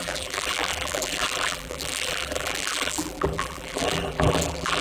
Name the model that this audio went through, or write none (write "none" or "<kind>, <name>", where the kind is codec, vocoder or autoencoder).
vocoder, BigVGAN v2